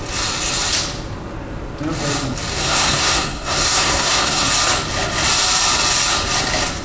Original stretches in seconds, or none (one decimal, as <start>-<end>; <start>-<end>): 0.0-2.5; 4.5-6.8